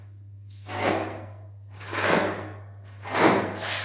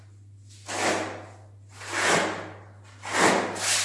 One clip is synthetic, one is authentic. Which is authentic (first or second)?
second